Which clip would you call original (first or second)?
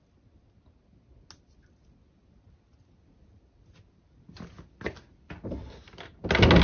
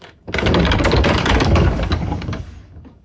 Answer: first